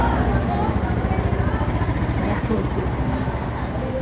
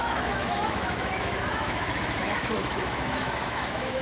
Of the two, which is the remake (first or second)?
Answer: second